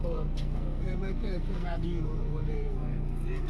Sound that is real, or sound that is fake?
fake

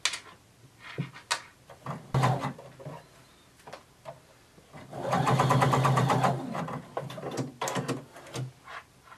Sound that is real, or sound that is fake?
real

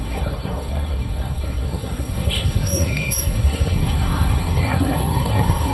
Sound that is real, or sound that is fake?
fake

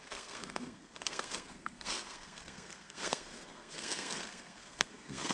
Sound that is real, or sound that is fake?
fake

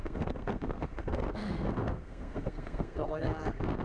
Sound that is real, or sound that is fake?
fake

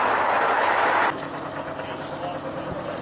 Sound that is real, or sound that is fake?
real